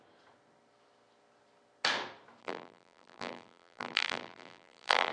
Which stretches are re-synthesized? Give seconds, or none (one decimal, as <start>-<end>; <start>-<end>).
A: 2.4-5.1